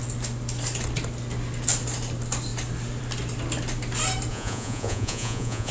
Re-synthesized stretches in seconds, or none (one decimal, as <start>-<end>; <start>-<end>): 4.3-5.7